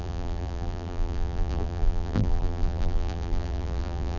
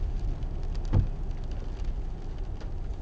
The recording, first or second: second